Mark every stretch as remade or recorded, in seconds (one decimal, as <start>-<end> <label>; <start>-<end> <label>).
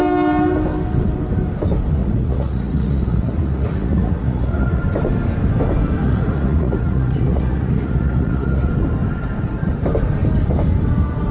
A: 0.0-2.0 recorded; 2.0-4.8 remade; 4.8-6.0 recorded; 6.0-8.7 remade; 8.7-11.3 recorded